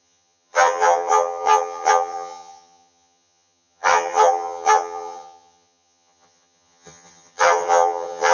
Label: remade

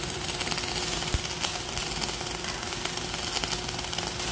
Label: recorded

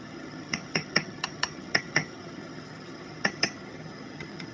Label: remade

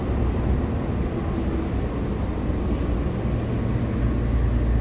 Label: recorded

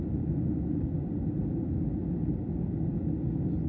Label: recorded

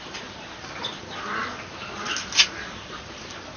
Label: recorded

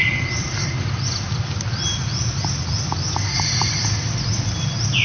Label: recorded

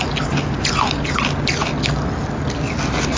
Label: recorded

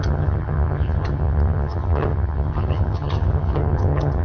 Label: remade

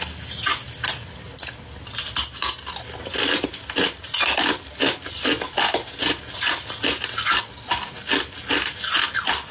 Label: recorded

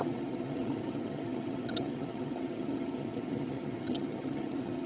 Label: remade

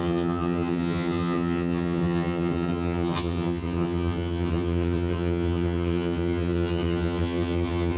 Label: remade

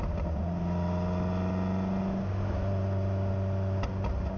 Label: recorded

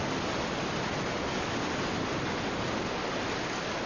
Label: recorded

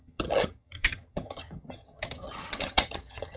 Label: remade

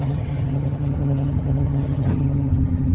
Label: remade